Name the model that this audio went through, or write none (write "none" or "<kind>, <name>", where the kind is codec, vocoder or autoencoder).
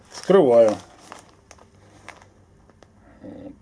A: none